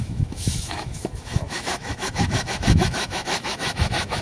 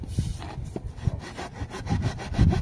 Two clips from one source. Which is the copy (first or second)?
first